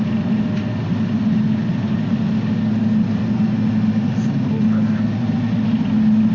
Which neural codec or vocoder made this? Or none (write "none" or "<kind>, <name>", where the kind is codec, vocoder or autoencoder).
none